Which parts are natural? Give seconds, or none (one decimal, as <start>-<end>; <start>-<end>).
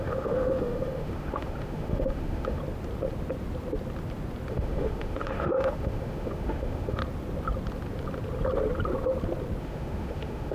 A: 2.6-4.5; 7.0-9.6